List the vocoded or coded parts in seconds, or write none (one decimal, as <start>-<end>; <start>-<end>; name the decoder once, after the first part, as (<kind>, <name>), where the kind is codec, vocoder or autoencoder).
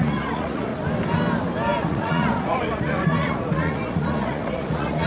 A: 0.0-0.7 (vocoder, Vocos); 1.8-5.1